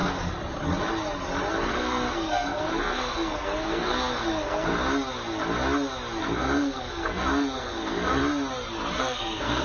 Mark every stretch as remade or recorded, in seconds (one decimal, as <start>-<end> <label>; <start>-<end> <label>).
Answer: 0.0-1.5 recorded; 1.5-4.7 remade; 4.7-6.2 recorded; 6.2-8.2 remade; 8.2-9.0 recorded; 9.0-9.6 remade